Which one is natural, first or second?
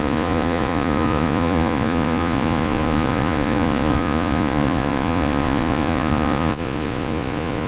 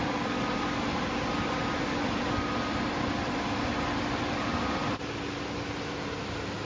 second